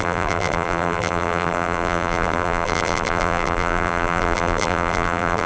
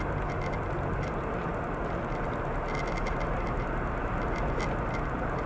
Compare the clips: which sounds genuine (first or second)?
second